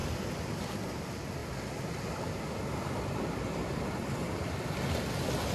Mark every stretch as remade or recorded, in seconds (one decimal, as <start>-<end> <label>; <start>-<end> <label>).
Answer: 0.0-5.5 recorded